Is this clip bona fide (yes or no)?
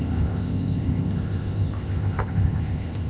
no